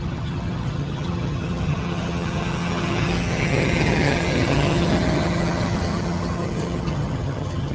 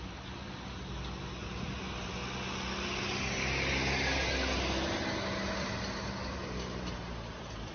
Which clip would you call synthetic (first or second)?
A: first